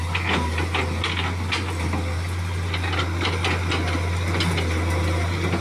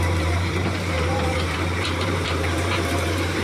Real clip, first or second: first